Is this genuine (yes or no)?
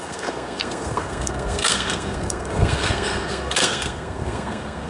no